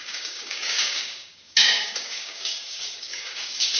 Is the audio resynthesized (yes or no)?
yes